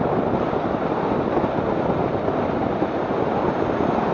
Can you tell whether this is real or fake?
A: real